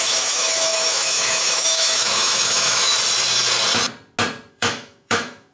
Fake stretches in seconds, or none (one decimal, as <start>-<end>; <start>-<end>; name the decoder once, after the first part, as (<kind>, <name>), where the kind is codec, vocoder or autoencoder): 0.0-2.9 (autoencoder, DAC-VAE); 4.5-5.5